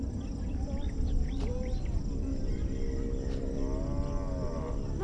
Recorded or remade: recorded